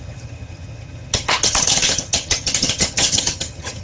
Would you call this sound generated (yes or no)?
yes